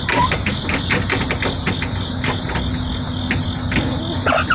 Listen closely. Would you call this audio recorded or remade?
recorded